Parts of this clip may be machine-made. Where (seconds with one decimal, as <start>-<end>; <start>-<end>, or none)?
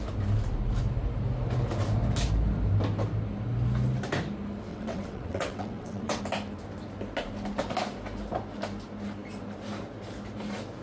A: 4.7-6.2